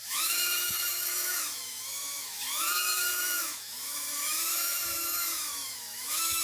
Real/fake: fake